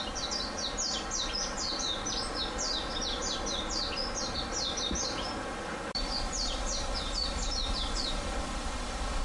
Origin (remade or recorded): recorded